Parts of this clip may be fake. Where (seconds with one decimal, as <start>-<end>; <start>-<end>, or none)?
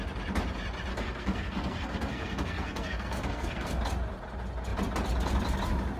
0.9-3.8